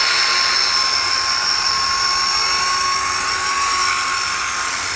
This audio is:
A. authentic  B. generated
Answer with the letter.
A